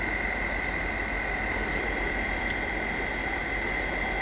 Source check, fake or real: real